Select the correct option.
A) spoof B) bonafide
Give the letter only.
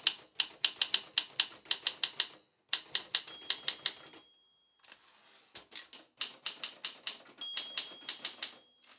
B